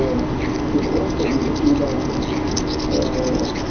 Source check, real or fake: real